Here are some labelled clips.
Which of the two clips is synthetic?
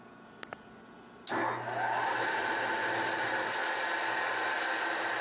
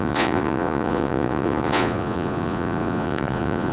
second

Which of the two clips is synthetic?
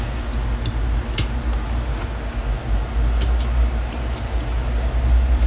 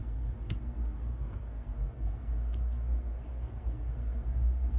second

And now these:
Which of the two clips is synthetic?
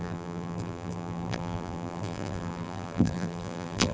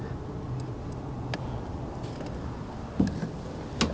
first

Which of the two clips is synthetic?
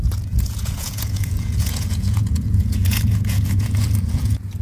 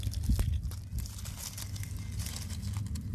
first